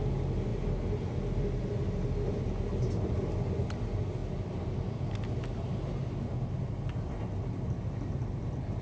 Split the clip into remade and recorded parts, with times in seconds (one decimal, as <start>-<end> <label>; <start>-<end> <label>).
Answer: 0.0-8.8 recorded